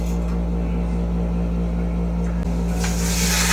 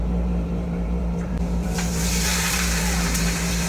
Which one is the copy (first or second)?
second